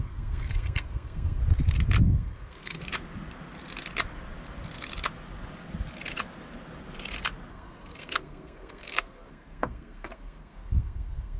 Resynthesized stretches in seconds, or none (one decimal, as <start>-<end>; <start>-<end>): 0.0-1.4; 2.0-2.8; 7.5-11.4